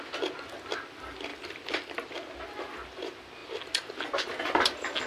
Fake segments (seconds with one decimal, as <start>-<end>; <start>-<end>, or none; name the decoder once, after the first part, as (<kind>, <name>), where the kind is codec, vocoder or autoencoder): 1.3-2.1 (vocoder, BigVGAN v2)